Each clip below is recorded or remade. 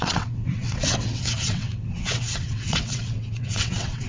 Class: remade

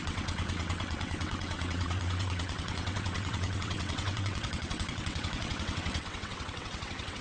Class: remade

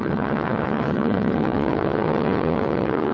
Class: remade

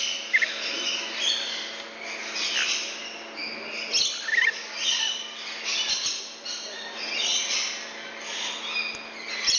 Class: recorded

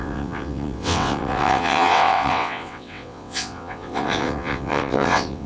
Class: remade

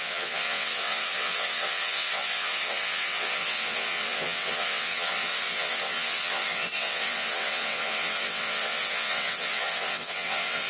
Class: remade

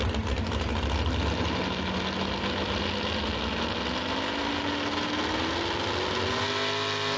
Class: recorded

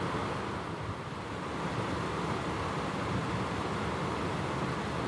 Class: recorded